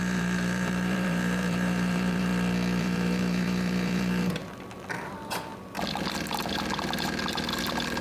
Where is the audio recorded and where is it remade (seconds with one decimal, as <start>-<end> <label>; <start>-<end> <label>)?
0.0-2.3 remade; 2.3-2.8 recorded; 2.8-4.4 remade; 4.4-5.0 recorded; 5.0-5.5 remade; 5.5-8.0 recorded